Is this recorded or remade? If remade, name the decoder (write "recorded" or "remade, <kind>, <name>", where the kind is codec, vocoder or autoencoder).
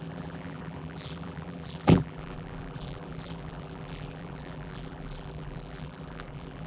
remade, vocoder, BigVGAN v2